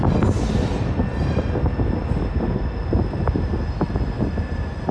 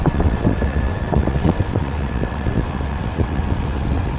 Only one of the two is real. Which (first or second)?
first